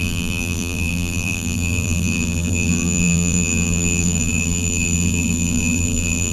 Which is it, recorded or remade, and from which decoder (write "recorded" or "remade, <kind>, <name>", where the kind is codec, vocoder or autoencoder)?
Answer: remade, vocoder, BigVGAN v2